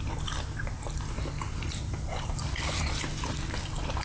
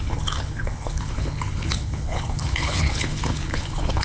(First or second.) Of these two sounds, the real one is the first